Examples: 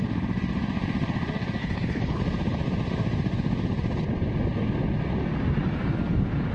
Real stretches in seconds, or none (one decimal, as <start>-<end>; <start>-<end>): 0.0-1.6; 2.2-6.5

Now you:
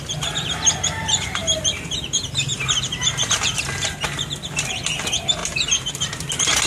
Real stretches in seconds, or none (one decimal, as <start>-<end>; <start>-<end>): 0.0-2.5; 3.2-5.4; 5.9-6.7

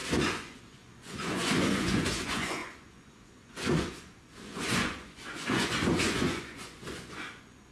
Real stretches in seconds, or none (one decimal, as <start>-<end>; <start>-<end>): none

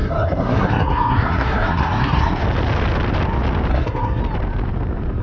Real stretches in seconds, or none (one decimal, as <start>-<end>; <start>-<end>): 2.4-3.7; 4.2-5.2

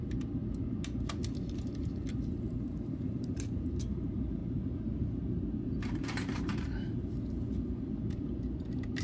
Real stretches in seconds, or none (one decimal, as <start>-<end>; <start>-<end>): 0.4-2.3

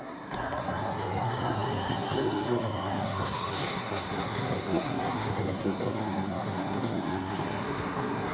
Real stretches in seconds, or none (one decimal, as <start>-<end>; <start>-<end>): none